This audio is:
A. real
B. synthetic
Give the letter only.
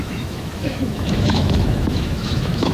B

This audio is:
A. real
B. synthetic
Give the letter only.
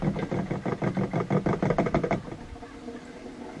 A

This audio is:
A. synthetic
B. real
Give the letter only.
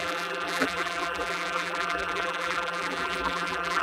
A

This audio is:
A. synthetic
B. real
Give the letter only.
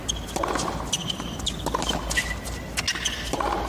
B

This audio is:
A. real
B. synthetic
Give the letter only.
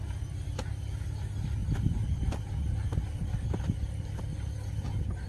A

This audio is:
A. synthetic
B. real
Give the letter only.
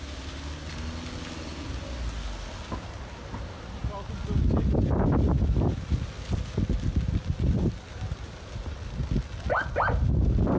B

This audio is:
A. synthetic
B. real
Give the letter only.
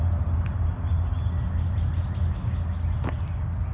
B